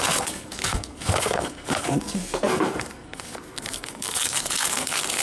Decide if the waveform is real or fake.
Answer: fake